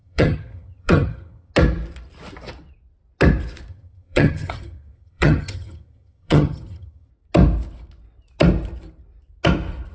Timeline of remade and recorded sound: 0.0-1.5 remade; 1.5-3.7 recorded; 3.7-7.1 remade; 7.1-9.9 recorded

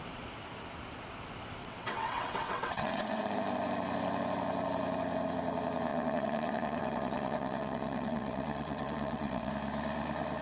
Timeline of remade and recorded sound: 0.0-1.6 recorded; 1.6-3.2 remade; 3.2-5.9 recorded; 5.9-9.5 remade; 9.5-10.4 recorded

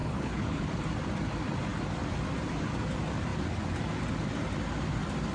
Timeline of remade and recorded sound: 0.0-0.7 remade; 0.7-5.3 recorded